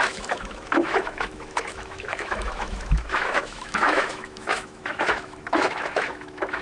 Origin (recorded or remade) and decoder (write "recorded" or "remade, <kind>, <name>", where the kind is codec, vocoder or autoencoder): remade, autoencoder, DAC-VAE